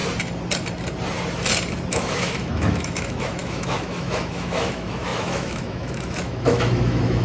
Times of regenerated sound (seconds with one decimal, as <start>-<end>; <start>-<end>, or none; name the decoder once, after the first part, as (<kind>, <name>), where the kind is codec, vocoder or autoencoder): 1.9-7.2 (autoencoder, DAC-VAE)